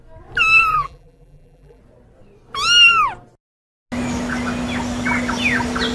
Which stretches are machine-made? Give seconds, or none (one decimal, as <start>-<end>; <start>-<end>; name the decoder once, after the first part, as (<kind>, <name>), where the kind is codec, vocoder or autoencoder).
0.7-1.8 (vocoder, BigVGAN v2)